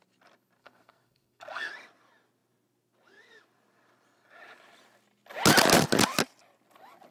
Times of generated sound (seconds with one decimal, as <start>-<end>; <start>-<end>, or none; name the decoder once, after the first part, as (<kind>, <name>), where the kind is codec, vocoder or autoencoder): 0.6-1.7 (codec, SNAC)